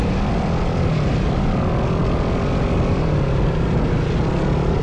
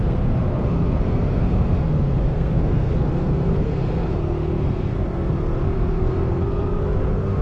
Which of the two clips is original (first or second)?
first